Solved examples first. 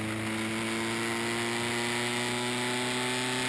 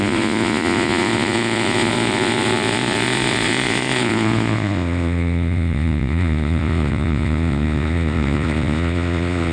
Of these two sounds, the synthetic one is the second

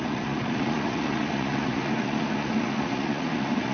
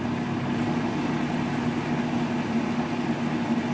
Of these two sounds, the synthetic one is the first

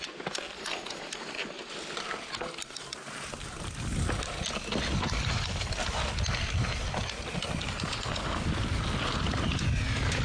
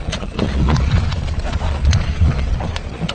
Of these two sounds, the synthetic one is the second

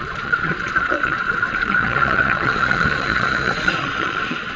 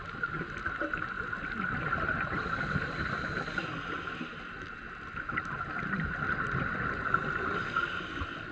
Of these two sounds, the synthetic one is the first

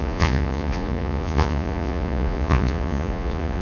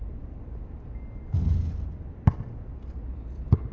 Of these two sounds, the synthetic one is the first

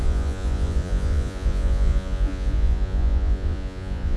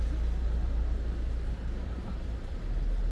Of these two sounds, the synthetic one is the first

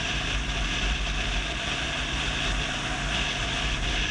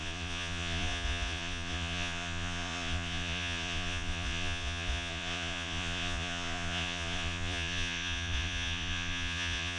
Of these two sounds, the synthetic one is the second